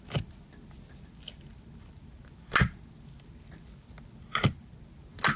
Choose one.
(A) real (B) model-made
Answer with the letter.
A